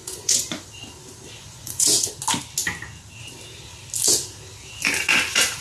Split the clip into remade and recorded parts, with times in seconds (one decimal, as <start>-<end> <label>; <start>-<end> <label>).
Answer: 0.0-0.7 remade; 0.7-1.4 recorded; 1.4-2.1 remade; 2.1-5.6 recorded